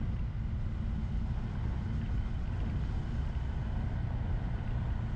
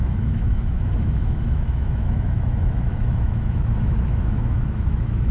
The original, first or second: first